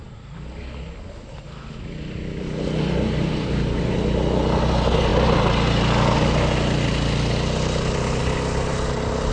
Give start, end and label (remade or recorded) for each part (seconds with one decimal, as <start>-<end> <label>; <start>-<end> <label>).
0.0-9.3 recorded